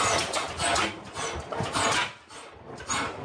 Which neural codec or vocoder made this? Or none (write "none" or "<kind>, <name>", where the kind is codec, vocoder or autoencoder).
none